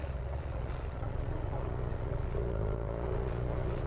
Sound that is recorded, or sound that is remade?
remade